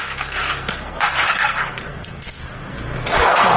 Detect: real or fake fake